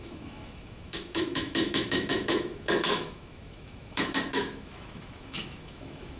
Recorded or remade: remade